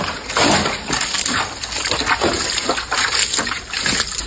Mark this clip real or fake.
real